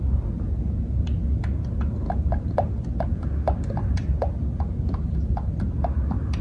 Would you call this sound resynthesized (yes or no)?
no